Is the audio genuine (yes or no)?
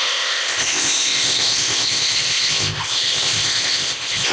no